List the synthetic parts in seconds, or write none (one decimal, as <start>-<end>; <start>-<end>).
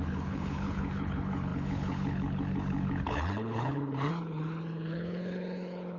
0.0-6.0